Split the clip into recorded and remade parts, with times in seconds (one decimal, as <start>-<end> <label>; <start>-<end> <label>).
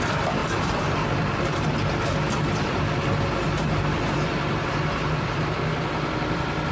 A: 0.0-6.7 remade